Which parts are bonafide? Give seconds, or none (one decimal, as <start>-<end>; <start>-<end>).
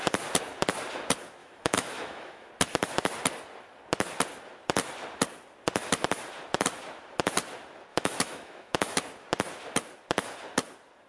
0.0-1.4; 2.5-7.9; 9.0-11.1